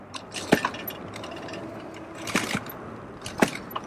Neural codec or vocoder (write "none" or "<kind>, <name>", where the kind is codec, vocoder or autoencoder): none